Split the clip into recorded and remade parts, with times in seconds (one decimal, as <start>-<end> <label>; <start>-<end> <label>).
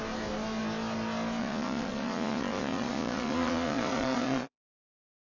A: 0.0-1.4 recorded; 1.4-4.6 remade; 4.6-5.3 recorded